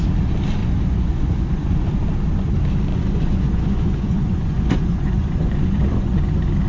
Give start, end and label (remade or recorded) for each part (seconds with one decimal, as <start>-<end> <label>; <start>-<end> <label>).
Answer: 0.0-0.6 recorded; 0.6-1.9 remade; 1.9-2.9 recorded; 2.9-6.2 remade; 6.2-6.7 recorded